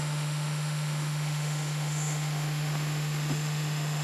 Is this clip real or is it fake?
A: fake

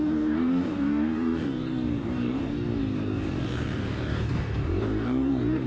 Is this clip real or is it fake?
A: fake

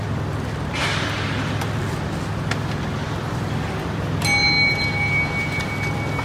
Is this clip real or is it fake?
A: real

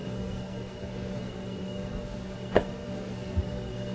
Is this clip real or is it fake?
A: fake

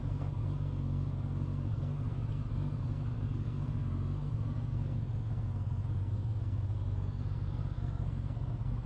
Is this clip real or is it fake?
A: fake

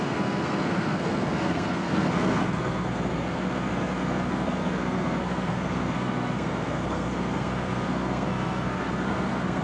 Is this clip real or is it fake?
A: fake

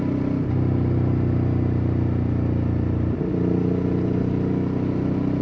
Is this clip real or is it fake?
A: real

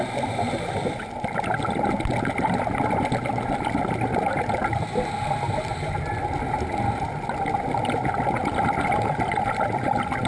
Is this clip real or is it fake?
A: real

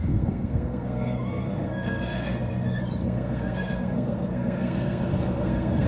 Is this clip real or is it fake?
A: fake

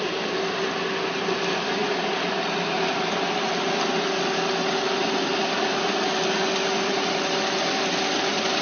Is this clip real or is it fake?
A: real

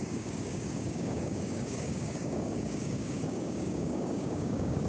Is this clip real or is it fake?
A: fake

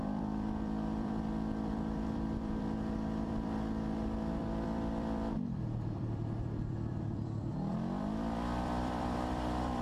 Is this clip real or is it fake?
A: fake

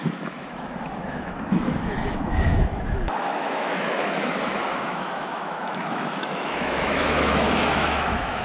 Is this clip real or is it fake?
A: fake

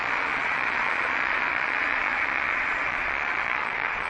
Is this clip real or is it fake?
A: fake